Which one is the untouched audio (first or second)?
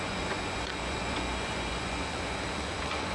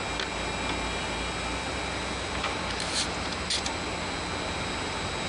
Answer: second